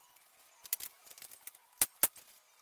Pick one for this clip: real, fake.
real